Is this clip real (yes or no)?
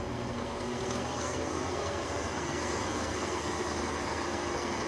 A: no